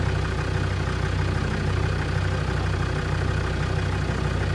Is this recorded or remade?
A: recorded